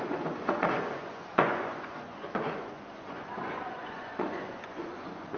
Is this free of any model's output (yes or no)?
no